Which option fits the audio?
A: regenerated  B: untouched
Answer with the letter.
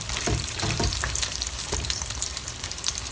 A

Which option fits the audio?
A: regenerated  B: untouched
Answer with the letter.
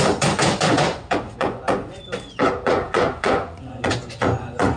A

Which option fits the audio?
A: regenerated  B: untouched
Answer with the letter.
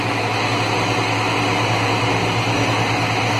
B